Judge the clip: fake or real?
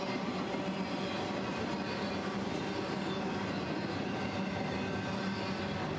real